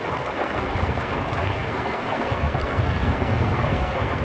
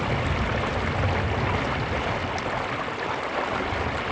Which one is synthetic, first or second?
first